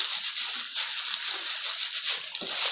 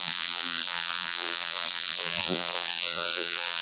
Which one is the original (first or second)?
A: first